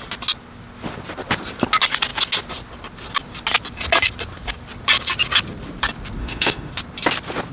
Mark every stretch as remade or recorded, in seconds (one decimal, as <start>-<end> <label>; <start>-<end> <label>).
0.0-6.2 recorded; 6.2-6.7 remade; 6.7-7.5 recorded